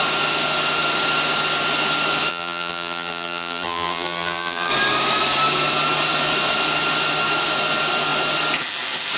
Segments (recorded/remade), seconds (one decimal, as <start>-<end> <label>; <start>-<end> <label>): 0.0-2.3 recorded; 2.3-4.7 remade; 4.7-9.2 recorded